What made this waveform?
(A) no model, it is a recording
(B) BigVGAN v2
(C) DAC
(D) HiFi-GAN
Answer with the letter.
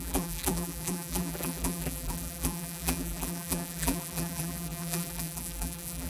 B